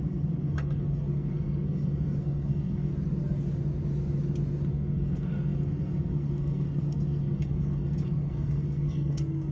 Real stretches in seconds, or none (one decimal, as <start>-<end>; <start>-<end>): 2.9-4.7